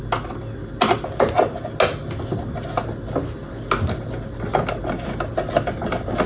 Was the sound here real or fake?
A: real